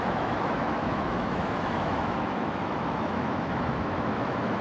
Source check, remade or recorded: remade